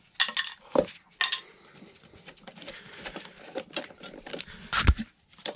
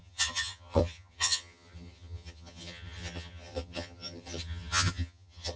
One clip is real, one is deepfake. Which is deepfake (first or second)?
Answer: second